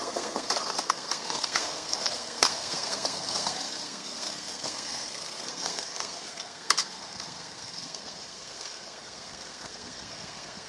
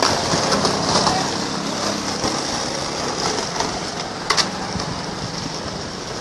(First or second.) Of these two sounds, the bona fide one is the second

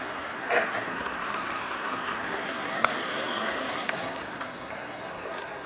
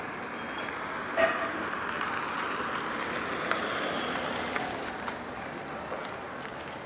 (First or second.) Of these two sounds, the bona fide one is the second